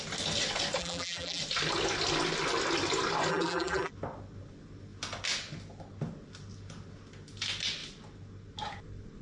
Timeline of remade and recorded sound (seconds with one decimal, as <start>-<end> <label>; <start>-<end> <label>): 0.0-0.8 recorded; 0.8-1.4 remade; 1.4-3.3 recorded; 3.3-3.9 remade; 3.9-9.2 recorded